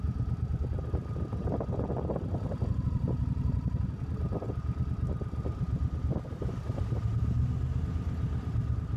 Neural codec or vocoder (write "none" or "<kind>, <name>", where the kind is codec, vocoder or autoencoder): none